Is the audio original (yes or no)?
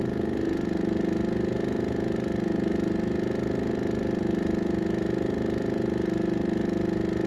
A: yes